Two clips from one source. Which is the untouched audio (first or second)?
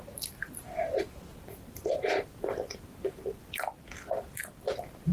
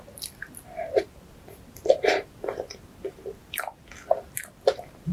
second